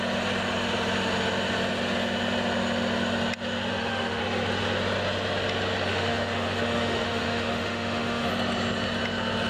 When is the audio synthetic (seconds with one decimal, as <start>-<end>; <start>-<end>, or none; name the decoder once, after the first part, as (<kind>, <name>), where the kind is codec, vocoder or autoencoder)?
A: 3.7-4.2 (autoencoder, DAC-VAE); 5.9-8.3